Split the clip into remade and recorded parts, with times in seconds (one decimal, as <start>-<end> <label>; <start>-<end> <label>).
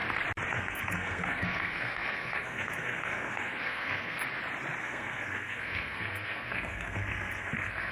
0.0-0.5 recorded; 0.5-4.2 remade; 4.2-4.8 recorded; 4.8-7.9 remade